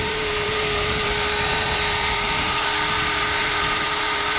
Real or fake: fake